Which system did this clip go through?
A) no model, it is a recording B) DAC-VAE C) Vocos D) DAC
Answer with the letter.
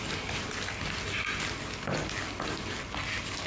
A